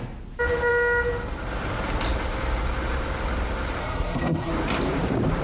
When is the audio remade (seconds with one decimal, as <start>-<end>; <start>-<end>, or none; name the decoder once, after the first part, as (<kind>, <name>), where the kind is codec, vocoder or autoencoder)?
3.8-4.5 (codec, SNAC)